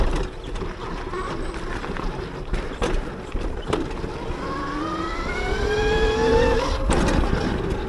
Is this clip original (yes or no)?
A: yes